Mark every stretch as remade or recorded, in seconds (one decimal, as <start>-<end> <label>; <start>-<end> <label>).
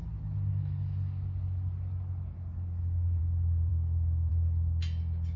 0.0-5.4 recorded